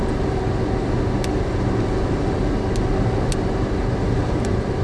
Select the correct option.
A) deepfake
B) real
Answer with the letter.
B